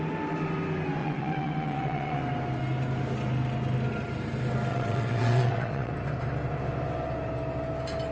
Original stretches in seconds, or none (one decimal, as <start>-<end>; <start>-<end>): 0.0-1.0; 2.2-4.7; 5.9-8.1